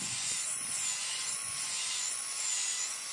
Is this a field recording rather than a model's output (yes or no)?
no